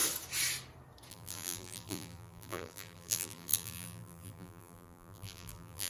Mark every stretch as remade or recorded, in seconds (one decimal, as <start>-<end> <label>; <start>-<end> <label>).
0.0-1.1 recorded; 1.1-5.9 remade